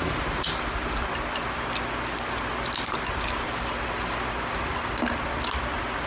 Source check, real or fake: real